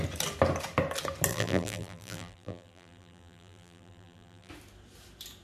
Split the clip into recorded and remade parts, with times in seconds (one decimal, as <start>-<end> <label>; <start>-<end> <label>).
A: 0.0-1.3 recorded; 1.3-4.5 remade; 4.5-5.4 recorded